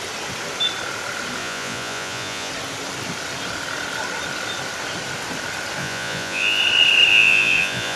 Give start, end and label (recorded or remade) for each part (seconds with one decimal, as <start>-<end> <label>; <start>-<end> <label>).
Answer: 0.0-1.4 recorded; 1.4-2.5 remade; 2.5-5.8 recorded; 5.8-6.6 remade; 6.6-7.1 recorded; 7.1-8.0 remade